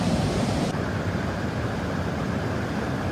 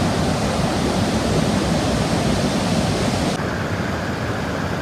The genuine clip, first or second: second